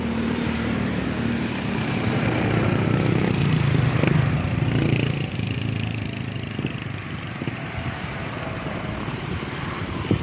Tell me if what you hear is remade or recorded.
remade